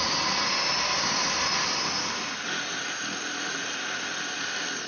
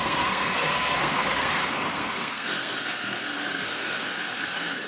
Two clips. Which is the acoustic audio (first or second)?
first